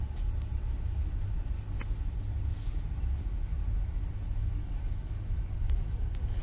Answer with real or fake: real